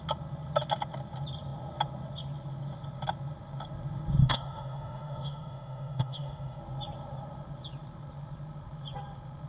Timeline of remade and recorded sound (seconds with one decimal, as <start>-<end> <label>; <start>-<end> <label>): 0.0-4.2 recorded; 4.2-6.6 remade; 6.6-9.5 recorded